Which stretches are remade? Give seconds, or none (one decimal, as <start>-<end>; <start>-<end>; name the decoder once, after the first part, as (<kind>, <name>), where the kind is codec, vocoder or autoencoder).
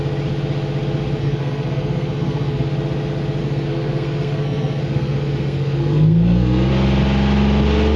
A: 1.2-2.7 (codec, SNAC); 3.4-6.7